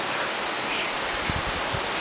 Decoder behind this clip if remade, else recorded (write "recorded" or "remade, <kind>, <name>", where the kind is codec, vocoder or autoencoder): recorded